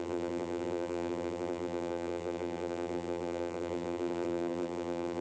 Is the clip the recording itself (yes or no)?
no